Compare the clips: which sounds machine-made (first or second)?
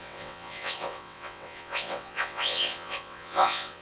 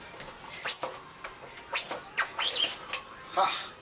first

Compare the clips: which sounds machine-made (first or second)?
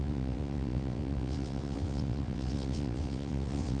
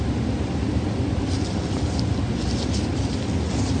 first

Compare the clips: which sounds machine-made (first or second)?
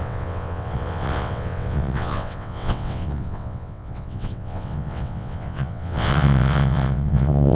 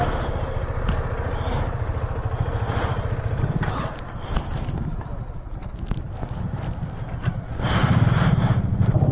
first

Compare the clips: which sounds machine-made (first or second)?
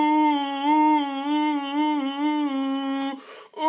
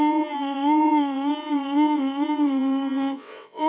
second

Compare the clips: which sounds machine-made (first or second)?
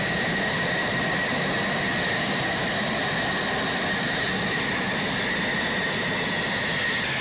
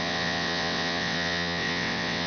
second